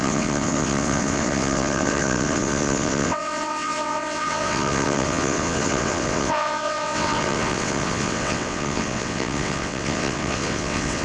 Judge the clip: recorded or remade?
remade